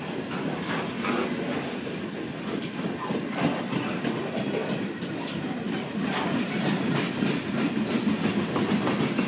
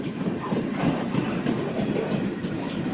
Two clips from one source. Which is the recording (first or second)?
first